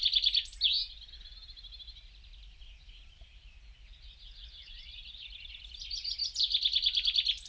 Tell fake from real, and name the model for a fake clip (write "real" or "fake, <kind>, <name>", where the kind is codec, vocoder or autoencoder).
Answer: real